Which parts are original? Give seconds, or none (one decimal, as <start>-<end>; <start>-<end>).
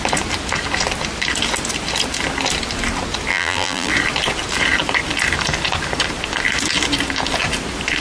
0.0-3.3; 3.9-8.0